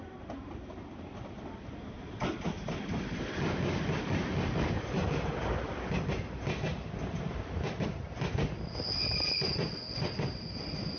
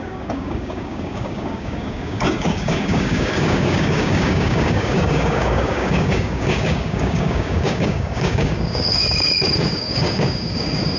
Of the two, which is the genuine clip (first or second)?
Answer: first